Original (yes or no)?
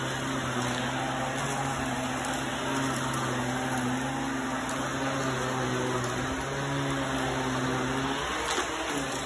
yes